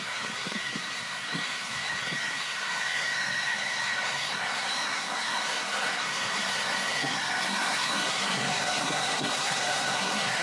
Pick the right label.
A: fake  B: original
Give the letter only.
A